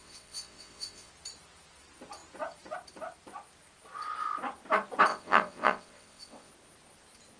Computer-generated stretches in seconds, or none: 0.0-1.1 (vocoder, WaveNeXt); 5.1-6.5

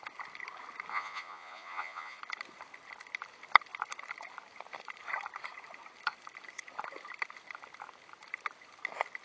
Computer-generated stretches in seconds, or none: 0.9-2.2 (vocoder, Vocos)